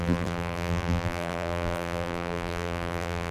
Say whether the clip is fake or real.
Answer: fake